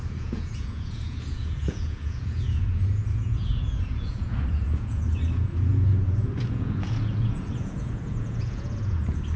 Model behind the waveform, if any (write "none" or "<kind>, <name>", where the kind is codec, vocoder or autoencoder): vocoder, Vocos